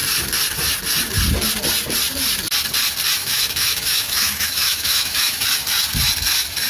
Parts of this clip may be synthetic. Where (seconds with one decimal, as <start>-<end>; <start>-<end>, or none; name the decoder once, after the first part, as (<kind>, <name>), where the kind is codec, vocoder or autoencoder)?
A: 3.2-5.5 (autoencoder, DAC-VAE)